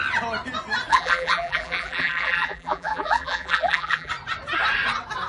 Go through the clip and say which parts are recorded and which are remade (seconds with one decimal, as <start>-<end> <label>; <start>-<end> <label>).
0.0-0.9 recorded; 0.9-4.1 remade; 4.1-5.3 recorded